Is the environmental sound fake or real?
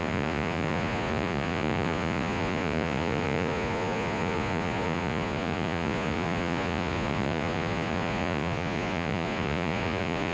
fake